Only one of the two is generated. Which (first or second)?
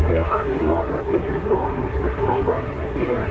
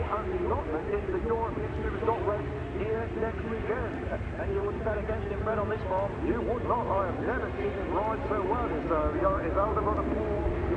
first